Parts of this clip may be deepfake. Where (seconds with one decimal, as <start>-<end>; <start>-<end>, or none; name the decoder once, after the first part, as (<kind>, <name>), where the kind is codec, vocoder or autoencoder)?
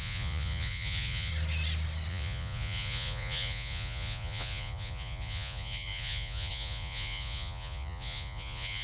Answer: 0.0-1.3 (vocoder, Vocos); 2.1-8.8